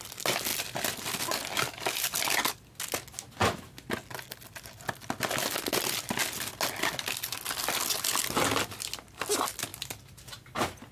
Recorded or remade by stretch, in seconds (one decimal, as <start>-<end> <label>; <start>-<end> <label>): 0.0-10.9 recorded